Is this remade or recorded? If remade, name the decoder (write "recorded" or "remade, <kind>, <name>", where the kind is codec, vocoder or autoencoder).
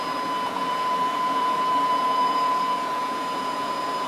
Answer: remade, vocoder, Vocos